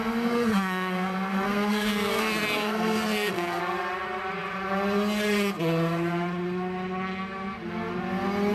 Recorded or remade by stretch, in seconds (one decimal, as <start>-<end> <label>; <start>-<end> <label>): 0.0-3.6 remade; 3.6-8.5 recorded